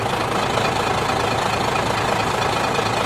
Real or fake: real